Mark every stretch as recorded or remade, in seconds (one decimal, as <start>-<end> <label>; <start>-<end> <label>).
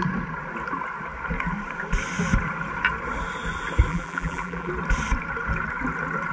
0.0-3.9 recorded; 3.9-4.7 remade; 4.7-6.3 recorded